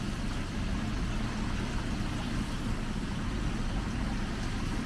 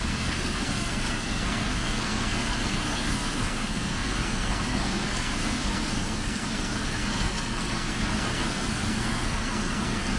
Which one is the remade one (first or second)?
second